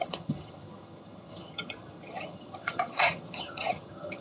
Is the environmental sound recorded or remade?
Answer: remade